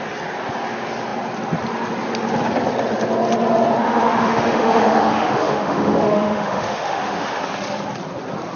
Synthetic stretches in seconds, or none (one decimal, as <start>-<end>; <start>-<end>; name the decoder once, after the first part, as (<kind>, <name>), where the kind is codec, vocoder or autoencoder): 3.8-7.4 (autoencoder, DAC-VAE)

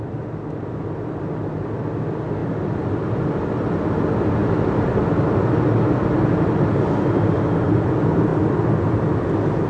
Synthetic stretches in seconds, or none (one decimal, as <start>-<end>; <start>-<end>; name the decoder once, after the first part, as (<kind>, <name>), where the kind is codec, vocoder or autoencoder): none

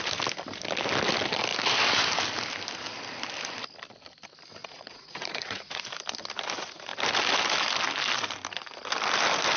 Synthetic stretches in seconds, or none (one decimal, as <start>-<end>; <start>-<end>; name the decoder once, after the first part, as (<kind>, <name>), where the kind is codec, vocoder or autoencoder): 4.6-5.8 (vocoder, Vocos)

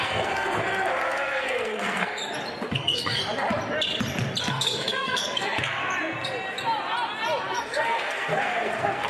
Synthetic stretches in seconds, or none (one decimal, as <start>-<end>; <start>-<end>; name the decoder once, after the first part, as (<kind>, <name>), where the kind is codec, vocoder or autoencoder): 0.0-2.2 (codec, SNAC); 2.7-3.2; 4.4-5.8; 7.5-9.1